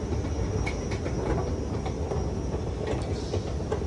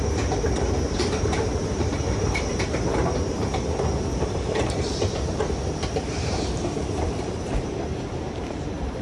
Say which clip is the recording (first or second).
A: first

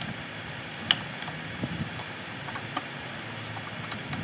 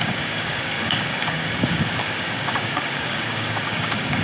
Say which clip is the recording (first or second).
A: first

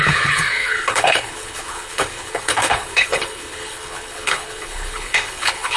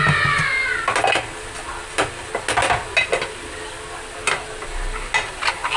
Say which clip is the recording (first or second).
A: second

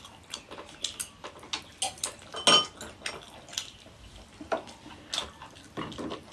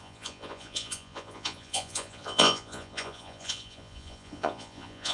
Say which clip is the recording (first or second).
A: first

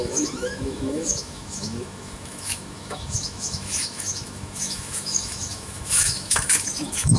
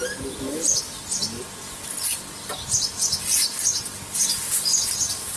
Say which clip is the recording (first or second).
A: second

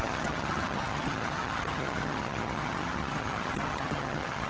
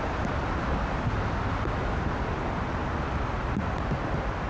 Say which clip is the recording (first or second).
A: second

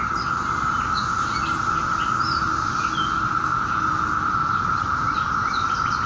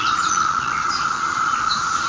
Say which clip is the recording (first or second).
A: first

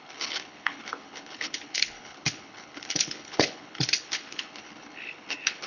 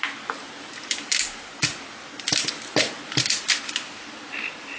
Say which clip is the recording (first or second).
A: second